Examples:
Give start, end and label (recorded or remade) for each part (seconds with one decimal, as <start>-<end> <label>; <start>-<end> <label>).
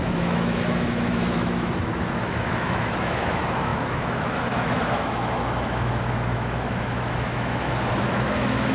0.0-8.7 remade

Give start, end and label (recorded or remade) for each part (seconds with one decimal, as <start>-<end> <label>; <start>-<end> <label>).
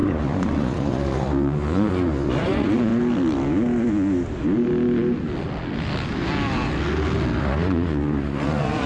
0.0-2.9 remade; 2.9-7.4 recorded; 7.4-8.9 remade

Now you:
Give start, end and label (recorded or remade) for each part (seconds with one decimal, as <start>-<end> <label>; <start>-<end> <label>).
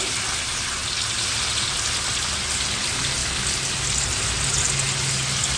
0.0-5.6 recorded